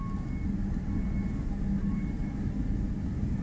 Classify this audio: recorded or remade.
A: recorded